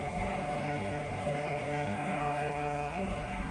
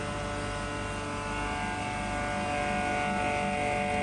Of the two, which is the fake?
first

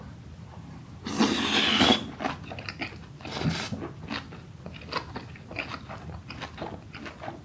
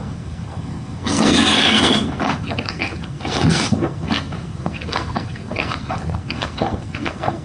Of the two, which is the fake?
second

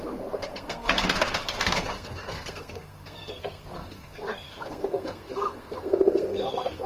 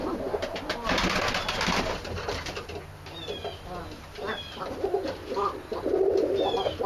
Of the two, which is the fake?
first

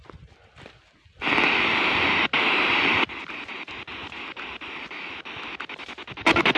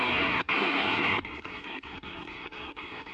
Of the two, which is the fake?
second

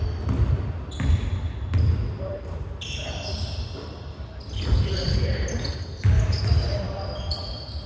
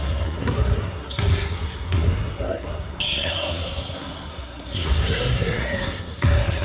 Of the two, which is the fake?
second